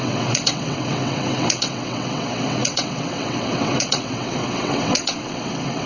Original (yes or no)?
no